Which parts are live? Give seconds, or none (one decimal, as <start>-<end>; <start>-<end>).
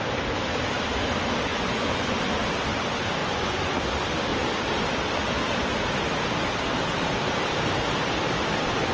0.0-1.5; 2.2-3.2; 3.8-8.9